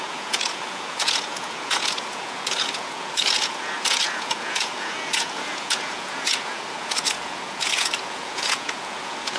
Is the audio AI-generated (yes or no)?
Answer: yes